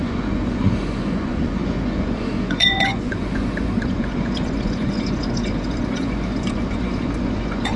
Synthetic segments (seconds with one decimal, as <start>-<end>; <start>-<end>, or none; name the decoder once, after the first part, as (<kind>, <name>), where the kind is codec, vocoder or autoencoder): 0.0-7.8 (vocoder, Vocos)